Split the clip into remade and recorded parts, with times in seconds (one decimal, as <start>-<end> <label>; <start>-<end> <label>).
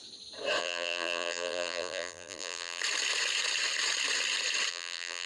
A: 0.0-0.6 recorded; 0.6-2.8 remade; 2.8-4.7 recorded; 4.7-5.3 remade